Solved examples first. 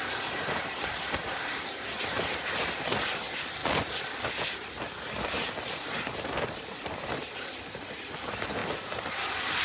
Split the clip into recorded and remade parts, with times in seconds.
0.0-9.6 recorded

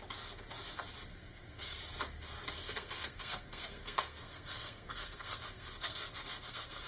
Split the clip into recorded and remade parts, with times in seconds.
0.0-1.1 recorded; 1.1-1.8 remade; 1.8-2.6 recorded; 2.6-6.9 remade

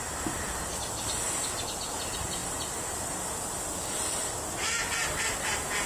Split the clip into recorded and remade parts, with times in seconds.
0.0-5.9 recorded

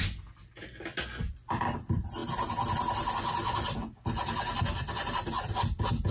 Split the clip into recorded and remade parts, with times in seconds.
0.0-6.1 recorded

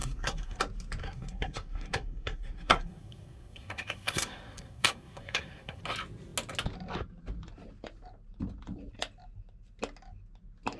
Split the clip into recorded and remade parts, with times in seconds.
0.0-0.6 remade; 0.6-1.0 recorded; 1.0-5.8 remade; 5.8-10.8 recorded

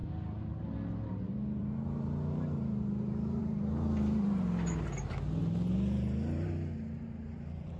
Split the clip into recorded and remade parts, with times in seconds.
0.0-7.8 recorded

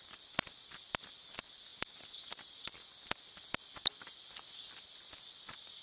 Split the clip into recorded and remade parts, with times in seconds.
0.0-5.8 recorded